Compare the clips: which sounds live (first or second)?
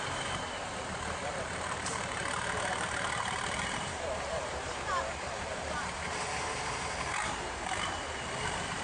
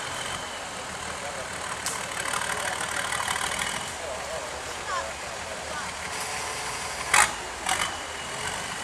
second